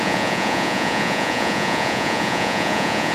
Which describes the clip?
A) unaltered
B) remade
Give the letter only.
B